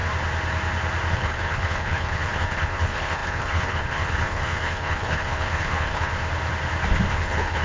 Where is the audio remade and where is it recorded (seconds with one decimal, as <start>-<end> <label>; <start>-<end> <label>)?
0.0-1.1 recorded; 1.1-6.1 remade; 6.1-7.1 recorded; 7.1-7.6 remade